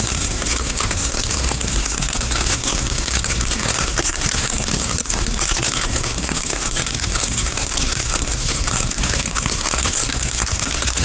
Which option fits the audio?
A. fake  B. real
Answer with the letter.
A